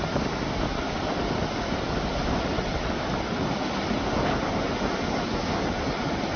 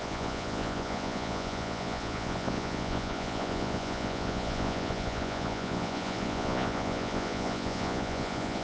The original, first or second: first